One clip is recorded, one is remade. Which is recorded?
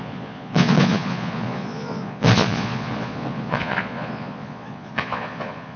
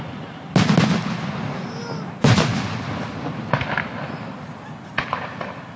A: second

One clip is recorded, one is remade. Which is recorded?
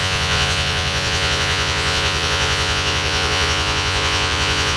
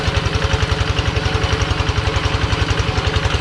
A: second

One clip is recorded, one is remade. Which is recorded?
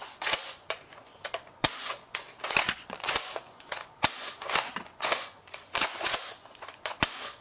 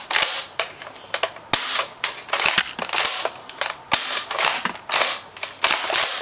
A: second